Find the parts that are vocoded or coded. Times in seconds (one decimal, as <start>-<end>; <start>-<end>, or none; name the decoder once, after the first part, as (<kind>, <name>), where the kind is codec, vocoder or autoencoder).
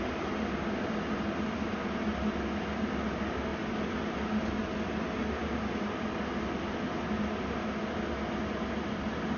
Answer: none